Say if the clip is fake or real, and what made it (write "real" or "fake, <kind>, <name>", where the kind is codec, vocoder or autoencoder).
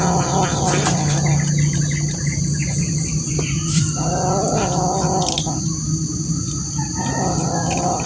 real